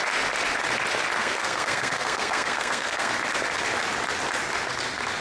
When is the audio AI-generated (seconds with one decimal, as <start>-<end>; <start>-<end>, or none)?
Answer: 1.2-3.1

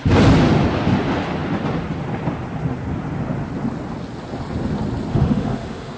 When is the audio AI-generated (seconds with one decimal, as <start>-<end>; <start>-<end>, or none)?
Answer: 5.1-6.0

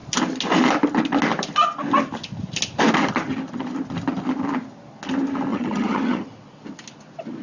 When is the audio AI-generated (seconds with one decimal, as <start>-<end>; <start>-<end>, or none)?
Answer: 5.5-6.3

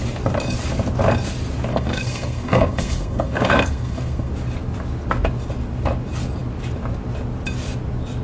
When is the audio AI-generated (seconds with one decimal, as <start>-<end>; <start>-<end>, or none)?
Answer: 1.7-4.3

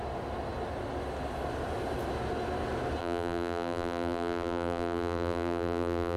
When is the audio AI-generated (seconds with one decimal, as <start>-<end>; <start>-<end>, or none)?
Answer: 3.0-6.2

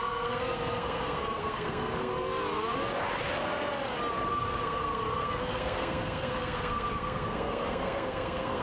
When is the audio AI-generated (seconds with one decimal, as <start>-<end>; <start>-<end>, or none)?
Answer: 0.0-2.1; 4.3-8.6